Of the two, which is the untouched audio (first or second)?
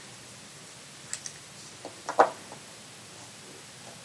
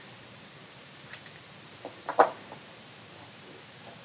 first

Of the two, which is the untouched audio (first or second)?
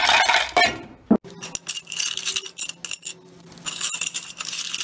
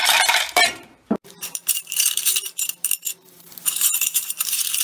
first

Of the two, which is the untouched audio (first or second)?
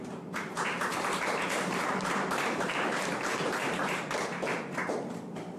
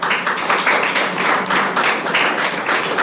second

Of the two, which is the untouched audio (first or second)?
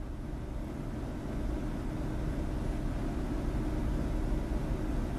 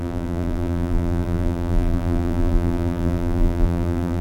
first